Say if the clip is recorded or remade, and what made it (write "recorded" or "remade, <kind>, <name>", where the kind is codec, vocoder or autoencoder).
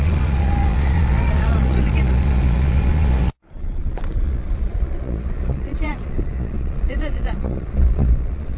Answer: remade, vocoder, Vocos